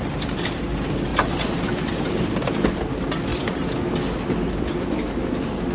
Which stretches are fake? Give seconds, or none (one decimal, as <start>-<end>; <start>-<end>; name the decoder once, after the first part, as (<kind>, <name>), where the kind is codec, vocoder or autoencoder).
1.1-1.9 (vocoder, BigVGAN v2); 3.3-4.9